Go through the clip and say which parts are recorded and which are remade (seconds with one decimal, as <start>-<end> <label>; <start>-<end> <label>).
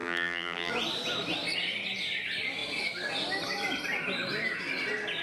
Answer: 0.0-0.7 remade; 0.7-5.2 recorded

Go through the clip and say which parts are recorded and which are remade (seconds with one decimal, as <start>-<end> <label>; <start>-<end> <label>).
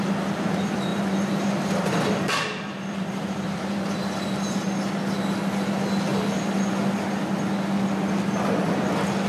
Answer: 0.0-0.9 recorded; 0.9-4.4 remade; 4.4-6.1 recorded; 6.1-6.7 remade; 6.7-9.3 recorded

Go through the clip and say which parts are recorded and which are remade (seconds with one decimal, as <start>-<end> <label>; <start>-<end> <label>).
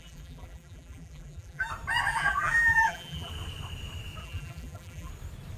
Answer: 0.0-1.7 remade; 1.7-2.1 recorded; 2.1-3.3 remade; 3.3-4.2 recorded; 4.2-5.1 remade; 5.1-5.6 recorded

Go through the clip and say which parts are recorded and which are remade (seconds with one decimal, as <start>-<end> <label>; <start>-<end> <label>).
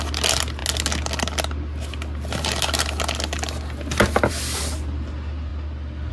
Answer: 0.0-6.1 recorded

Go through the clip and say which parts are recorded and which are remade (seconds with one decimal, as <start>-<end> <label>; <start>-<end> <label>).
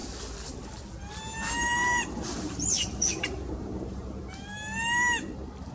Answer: 0.0-1.8 recorded; 1.8-4.2 remade; 4.2-5.7 recorded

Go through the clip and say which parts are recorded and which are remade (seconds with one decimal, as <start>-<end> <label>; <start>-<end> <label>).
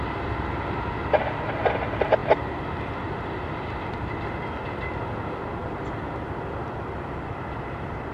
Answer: 0.0-5.6 recorded; 5.6-8.1 remade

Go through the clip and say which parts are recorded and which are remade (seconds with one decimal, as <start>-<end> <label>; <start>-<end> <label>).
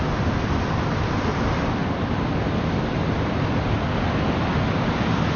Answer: 0.0-5.4 recorded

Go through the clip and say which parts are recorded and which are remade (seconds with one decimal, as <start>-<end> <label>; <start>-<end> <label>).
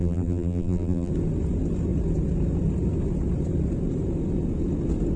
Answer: 0.0-1.1 remade; 1.1-5.2 recorded